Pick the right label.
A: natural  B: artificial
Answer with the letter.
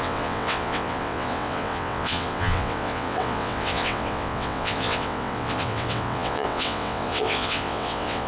B